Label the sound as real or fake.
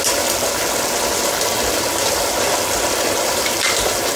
real